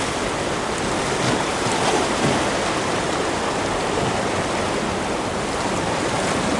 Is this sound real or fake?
real